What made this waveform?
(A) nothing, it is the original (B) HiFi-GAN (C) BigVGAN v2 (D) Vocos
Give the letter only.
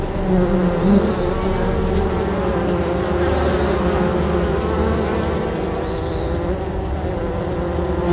A